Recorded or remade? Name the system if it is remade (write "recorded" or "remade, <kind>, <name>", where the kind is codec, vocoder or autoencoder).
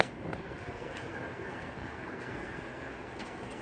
remade, codec, SNAC